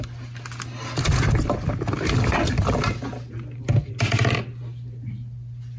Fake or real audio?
real